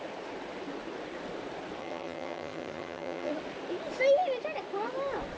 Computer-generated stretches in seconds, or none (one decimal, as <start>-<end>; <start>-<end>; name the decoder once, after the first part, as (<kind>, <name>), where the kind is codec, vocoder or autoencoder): 1.8-3.3 (vocoder, HiFi-GAN)